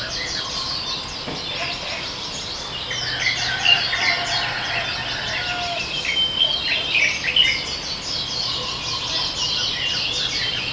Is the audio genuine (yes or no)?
yes